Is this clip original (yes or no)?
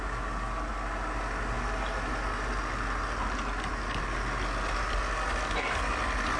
yes